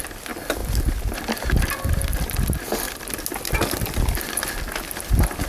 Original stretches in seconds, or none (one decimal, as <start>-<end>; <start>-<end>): 0.0-5.5